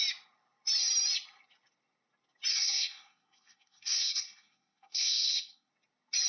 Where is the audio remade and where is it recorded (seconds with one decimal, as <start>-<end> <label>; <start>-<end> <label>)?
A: 0.0-2.5 recorded; 2.5-5.7 remade; 5.7-6.3 recorded